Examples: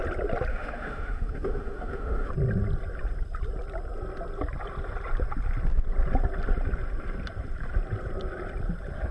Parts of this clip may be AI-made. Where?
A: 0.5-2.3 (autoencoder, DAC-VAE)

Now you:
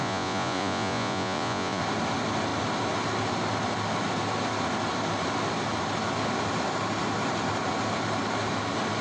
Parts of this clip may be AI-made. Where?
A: 0.0-1.8 (vocoder, Vocos)